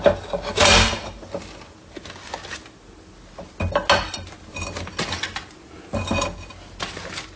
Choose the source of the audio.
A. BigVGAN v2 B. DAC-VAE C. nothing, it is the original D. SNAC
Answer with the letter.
C